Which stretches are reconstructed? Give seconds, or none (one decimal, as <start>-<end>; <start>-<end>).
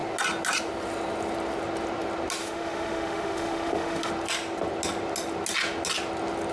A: 2.4-4.1